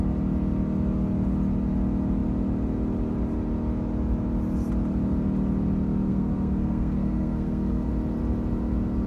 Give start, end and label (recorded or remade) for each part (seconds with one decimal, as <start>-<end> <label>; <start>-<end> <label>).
0.0-6.1 recorded; 6.1-7.9 remade; 7.9-9.1 recorded